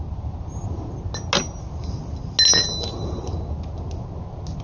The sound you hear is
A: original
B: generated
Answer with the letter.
A